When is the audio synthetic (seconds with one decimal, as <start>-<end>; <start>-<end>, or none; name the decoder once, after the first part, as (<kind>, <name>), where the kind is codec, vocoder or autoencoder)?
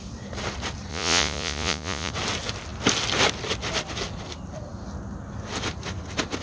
0.9-2.1 (vocoder, Vocos)